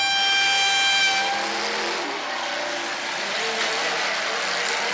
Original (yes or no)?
yes